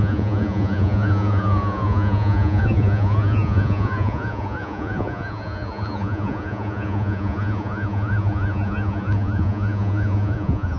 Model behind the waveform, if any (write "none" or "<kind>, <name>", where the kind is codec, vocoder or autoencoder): vocoder, Vocos